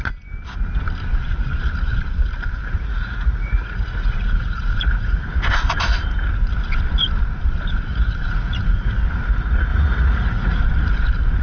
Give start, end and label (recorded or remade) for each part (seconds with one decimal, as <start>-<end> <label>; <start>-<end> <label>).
0.0-2.6 recorded; 2.6-5.2 remade; 5.2-7.9 recorded; 7.9-9.0 remade; 9.0-9.7 recorded; 9.7-10.6 remade; 10.6-11.4 recorded